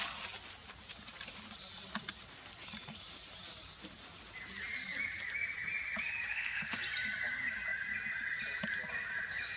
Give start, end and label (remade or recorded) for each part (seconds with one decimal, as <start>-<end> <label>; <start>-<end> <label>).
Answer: 0.0-6.3 recorded; 6.3-6.8 remade; 6.8-9.6 recorded